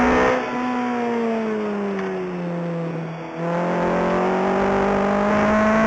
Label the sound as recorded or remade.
recorded